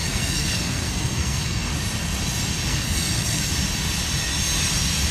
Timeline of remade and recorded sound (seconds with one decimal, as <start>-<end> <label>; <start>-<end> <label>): 0.0-1.7 remade; 1.7-2.7 recorded; 2.7-3.5 remade; 3.5-5.1 recorded